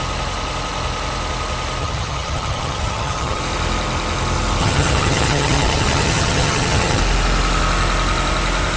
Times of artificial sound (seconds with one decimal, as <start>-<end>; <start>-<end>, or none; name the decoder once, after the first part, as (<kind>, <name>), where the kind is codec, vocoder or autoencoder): 1.8-3.4 (vocoder, HiFi-GAN); 4.6-7.0